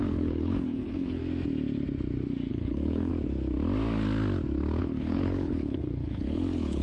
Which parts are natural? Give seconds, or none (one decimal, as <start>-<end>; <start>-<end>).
1.2-2.5; 3.1-4.8